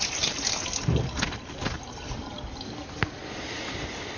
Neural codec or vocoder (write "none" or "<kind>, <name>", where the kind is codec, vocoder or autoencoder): none